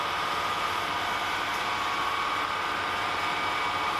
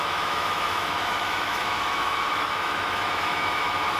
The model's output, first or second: second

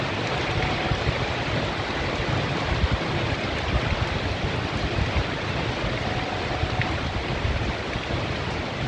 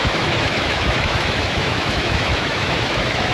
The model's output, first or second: second